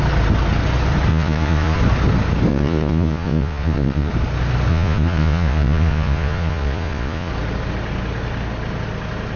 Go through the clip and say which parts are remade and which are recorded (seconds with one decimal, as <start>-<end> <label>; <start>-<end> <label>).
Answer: 0.0-1.1 recorded; 1.1-1.8 remade; 1.8-2.5 recorded; 2.5-4.1 remade; 4.1-4.7 recorded; 4.7-7.3 remade; 7.3-9.4 recorded